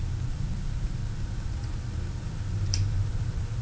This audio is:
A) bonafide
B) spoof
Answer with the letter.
B